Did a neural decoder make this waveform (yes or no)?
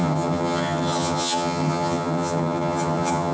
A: yes